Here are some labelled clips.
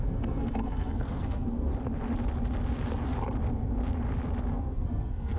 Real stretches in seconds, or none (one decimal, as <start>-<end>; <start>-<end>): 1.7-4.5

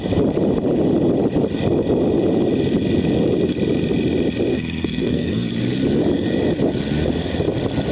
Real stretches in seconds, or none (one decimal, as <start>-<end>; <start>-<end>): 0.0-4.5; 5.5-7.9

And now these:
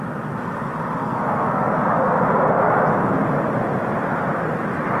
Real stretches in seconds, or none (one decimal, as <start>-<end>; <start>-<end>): 0.0-1.0; 2.2-5.0